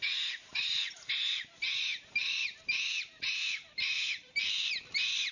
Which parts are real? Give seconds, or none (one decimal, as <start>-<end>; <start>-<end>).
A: 0.0-0.5; 1.4-1.9